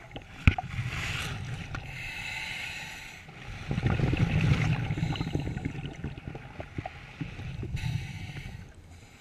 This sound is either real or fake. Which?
real